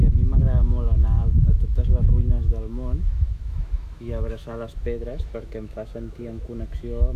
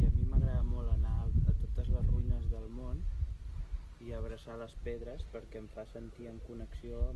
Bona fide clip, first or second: second